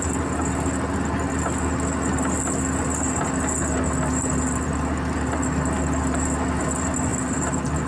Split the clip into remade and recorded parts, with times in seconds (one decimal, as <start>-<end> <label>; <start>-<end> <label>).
0.0-7.9 recorded